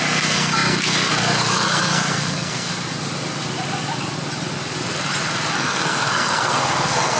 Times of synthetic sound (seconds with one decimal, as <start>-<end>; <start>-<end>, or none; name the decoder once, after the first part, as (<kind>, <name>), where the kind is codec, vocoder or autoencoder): 0.0-2.7 (codec, SNAC); 5.5-7.2